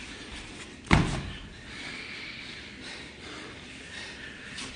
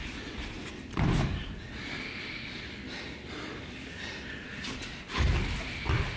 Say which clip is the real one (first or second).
second